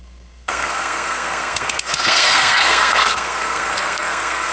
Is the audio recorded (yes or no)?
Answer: no